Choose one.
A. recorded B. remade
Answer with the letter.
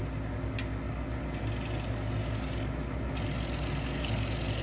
A